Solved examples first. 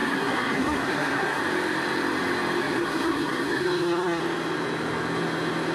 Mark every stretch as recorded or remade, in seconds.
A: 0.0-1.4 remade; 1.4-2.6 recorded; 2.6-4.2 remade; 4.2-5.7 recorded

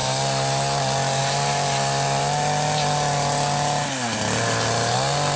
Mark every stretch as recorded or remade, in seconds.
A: 0.0-5.4 recorded

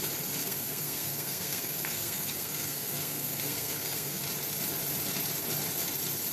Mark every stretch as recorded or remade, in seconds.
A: 0.0-0.4 recorded; 0.4-4.2 remade; 4.2-6.3 recorded

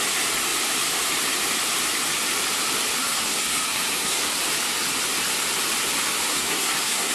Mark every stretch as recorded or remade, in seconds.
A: 0.0-3.0 recorded; 3.0-4.3 remade; 4.3-6.3 recorded; 6.3-7.1 remade